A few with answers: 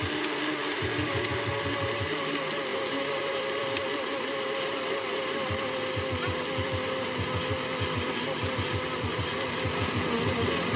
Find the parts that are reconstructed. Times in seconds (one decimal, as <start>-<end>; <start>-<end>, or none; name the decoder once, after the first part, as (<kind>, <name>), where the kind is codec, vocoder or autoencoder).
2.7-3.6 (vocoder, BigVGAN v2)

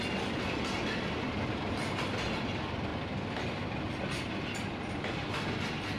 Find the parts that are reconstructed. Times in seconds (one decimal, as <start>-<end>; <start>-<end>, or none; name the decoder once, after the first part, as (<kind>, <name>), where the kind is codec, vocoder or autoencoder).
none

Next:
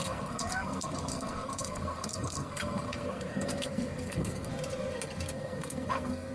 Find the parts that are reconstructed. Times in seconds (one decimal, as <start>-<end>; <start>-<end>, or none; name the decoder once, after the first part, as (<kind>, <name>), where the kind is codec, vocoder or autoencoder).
0.0-4.5 (codec, SNAC); 5.3-6.3